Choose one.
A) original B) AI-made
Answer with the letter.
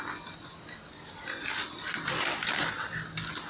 A